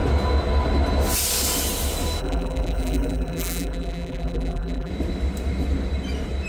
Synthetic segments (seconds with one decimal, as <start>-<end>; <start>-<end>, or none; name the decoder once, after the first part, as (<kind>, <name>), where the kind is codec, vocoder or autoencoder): 2.2-4.9 (vocoder, BigVGAN v2)